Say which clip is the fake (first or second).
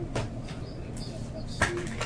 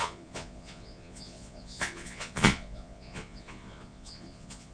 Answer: second